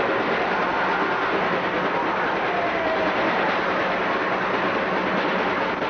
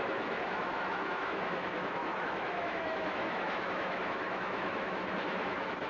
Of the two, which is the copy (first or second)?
second